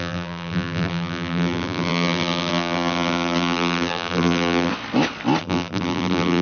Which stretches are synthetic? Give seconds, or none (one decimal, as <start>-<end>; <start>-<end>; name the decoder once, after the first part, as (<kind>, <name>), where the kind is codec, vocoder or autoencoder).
0.0-4.7 (vocoder, BigVGAN v2); 5.4-6.4